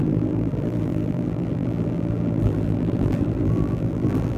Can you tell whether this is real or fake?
fake